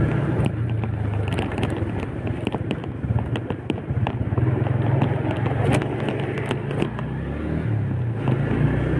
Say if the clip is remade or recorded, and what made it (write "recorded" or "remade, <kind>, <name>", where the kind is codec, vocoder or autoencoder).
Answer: recorded